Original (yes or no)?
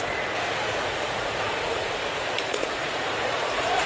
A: no